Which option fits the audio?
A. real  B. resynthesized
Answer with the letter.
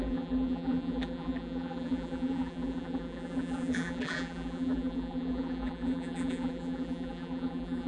B